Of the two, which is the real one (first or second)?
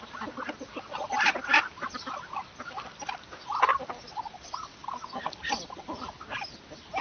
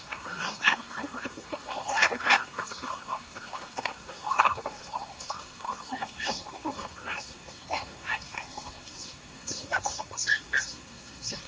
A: first